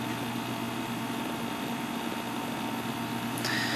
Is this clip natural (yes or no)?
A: yes